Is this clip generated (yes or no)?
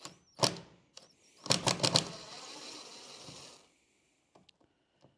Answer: no